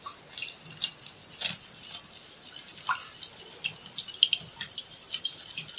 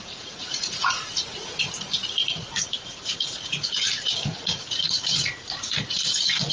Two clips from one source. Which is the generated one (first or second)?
second